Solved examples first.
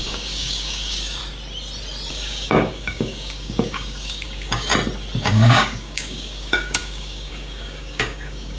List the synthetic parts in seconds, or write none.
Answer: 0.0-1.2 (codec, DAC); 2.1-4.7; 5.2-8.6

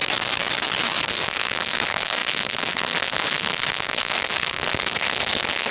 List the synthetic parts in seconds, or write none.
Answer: 1.1-5.7 (codec, SNAC)

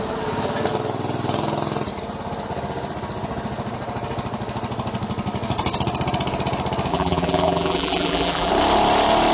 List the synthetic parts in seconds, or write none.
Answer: 6.9-8.5 (vocoder, BigVGAN v2)

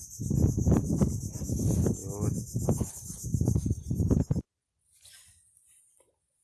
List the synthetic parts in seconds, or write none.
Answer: 0.6-1.4 (vocoder, BigVGAN v2)

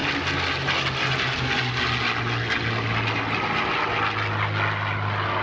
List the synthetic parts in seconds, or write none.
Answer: none